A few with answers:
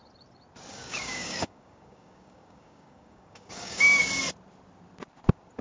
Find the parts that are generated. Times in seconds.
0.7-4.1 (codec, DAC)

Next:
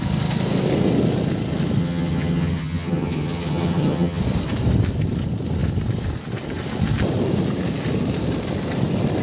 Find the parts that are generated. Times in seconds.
1.8-4.2 (vocoder, HiFi-GAN)